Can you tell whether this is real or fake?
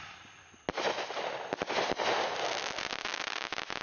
real